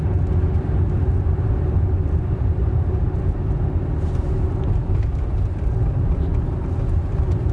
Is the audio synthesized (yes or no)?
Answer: no